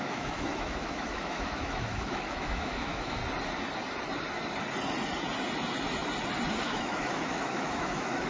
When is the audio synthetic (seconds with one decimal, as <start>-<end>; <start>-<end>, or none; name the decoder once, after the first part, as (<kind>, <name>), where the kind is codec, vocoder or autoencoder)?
0.0-3.2 (autoencoder, DAC-VAE); 6.6-8.3